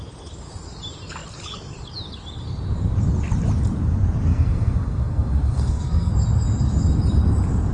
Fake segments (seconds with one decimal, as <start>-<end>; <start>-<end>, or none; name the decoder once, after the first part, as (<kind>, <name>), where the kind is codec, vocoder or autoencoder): 4.3-6.1 (codec, SNAC)